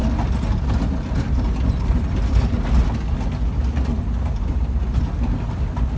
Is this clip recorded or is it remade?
recorded